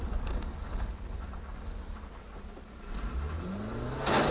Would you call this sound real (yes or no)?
yes